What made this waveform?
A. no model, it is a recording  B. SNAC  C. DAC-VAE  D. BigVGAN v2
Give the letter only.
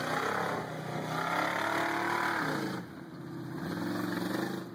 A